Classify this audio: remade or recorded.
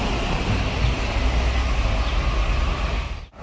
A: recorded